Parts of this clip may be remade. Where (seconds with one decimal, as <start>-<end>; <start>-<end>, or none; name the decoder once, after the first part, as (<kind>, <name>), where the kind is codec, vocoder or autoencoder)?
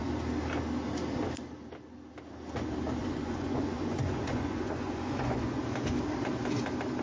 3.0-5.6 (vocoder, Vocos)